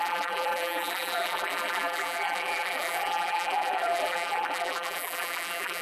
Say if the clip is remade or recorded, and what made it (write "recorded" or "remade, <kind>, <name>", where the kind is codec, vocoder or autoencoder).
remade, vocoder, BigVGAN v2